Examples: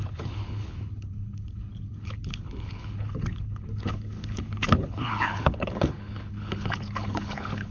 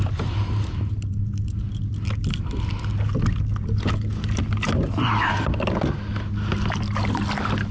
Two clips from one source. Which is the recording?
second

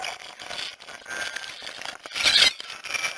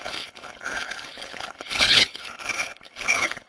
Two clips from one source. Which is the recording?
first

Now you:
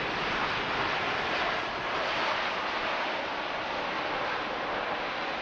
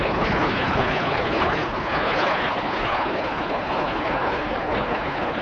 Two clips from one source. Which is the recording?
first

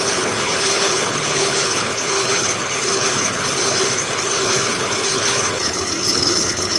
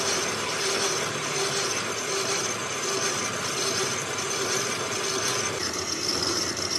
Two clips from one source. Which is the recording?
second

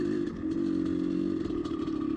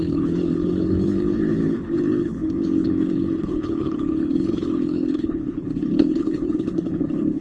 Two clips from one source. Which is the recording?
first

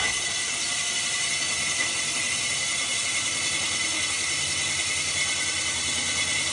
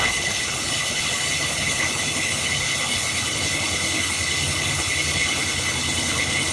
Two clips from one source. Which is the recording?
first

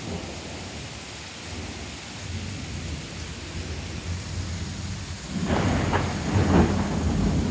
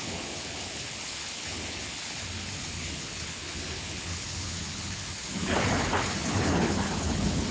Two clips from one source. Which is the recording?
first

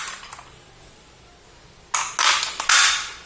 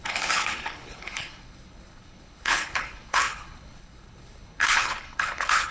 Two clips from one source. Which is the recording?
first